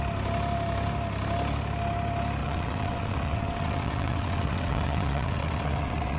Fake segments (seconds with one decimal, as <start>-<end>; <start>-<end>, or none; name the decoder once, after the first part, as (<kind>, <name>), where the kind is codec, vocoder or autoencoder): 2.4-6.2 (vocoder, WaveNeXt)